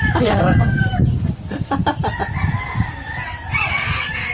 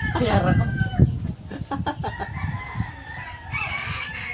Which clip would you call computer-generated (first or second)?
first